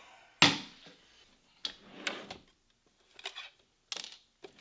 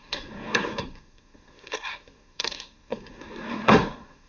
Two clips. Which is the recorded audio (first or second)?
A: first